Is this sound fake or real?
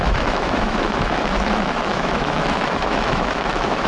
fake